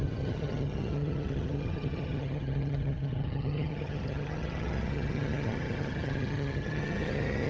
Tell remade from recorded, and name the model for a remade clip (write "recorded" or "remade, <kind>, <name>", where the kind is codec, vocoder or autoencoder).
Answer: remade, vocoder, HiFi-GAN